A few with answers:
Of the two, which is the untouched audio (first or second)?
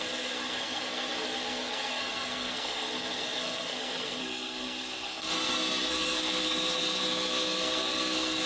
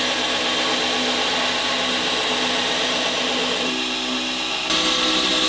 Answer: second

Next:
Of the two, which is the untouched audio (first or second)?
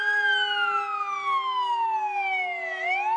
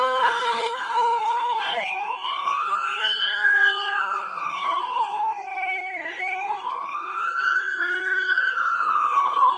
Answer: first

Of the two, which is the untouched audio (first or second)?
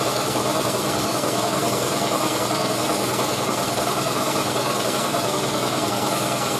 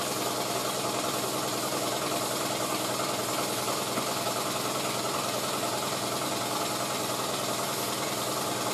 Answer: second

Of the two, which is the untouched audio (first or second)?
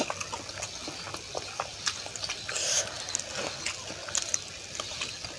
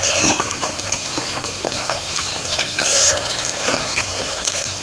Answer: first